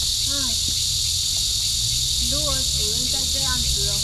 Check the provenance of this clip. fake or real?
real